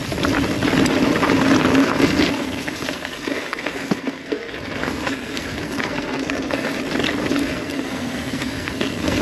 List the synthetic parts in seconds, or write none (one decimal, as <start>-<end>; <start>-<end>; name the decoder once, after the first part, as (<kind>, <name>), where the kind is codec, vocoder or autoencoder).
1.7-6.8 (codec, SNAC); 7.2-9.2